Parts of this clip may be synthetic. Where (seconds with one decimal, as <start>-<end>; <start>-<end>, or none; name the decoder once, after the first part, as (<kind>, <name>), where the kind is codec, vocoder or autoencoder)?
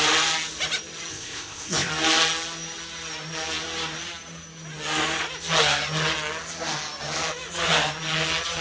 1.1-1.9 (codec, ZipCodec)